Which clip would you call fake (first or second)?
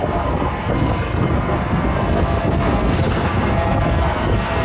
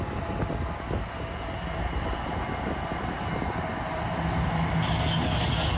first